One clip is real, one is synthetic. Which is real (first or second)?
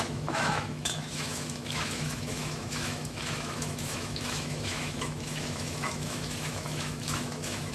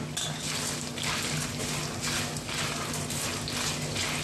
second